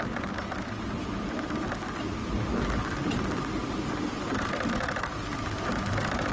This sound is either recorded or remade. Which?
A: recorded